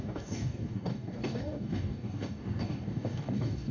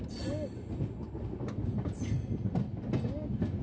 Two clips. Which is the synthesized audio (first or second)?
first